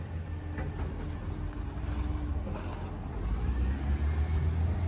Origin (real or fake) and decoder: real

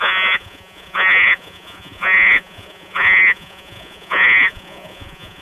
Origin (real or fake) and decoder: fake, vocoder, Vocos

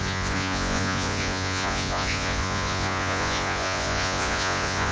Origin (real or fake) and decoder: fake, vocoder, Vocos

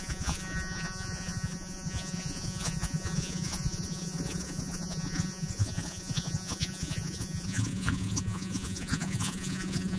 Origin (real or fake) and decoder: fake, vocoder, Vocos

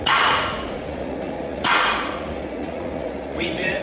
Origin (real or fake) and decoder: fake, vocoder, Vocos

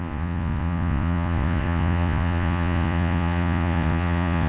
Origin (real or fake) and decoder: fake, vocoder, Vocos